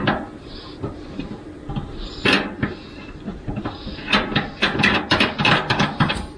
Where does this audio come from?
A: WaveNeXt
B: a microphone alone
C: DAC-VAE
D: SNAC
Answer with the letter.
B